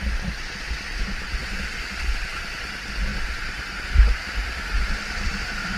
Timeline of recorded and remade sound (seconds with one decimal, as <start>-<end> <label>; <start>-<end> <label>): 0.0-5.8 recorded